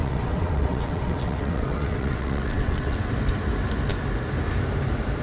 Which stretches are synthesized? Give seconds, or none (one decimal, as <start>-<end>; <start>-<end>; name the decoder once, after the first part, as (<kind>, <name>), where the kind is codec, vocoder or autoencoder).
0.0-3.1 (vocoder, WaveNeXt)